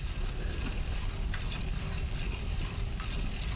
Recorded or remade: remade